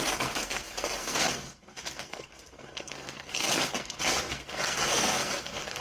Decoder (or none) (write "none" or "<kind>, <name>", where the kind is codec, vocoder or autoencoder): codec, SNAC